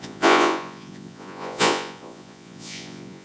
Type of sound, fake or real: fake